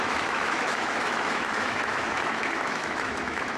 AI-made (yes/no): yes